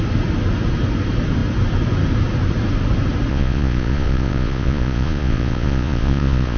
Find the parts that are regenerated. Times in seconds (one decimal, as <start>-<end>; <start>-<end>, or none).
3.3-6.6